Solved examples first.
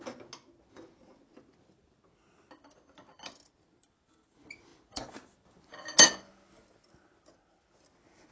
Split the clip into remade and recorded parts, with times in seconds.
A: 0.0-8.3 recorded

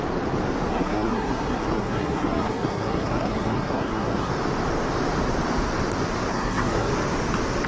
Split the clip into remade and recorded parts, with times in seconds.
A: 0.0-0.7 recorded; 0.7-4.3 remade; 4.3-6.3 recorded; 6.3-6.9 remade; 6.9-7.7 recorded